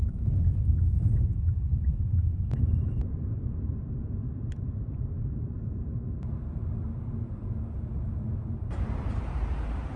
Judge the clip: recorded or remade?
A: remade